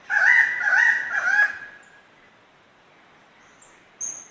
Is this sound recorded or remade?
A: recorded